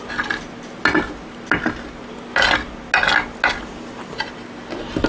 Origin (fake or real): real